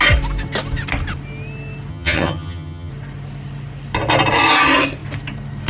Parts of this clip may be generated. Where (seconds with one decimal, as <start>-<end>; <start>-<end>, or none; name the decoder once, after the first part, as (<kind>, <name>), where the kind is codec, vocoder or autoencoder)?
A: 1.9-2.9 (vocoder, HiFi-GAN)